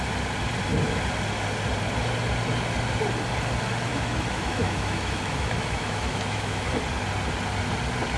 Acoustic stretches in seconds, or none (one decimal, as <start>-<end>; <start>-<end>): 0.0-3.9; 6.8-8.2